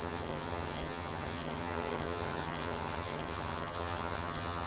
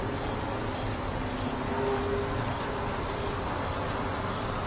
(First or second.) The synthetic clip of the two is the first